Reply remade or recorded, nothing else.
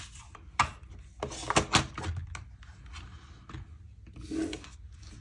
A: recorded